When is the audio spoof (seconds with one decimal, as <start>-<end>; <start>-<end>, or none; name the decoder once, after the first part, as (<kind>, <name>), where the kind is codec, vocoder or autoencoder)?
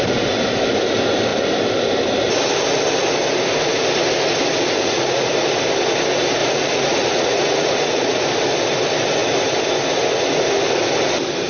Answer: 4.8-5.3 (vocoder, Vocos); 6.4-8.2